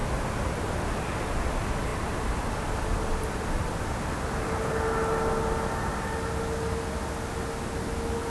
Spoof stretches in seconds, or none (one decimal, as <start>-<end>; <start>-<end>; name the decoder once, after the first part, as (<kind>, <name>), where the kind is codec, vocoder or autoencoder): none